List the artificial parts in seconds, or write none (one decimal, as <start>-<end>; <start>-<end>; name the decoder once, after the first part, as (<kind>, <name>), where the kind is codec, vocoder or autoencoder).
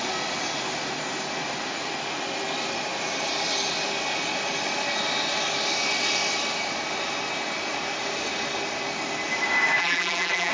9.8-10.5 (vocoder, BigVGAN v2)